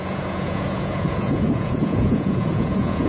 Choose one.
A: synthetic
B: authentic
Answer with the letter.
A